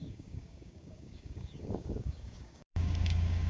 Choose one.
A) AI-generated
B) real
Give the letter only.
A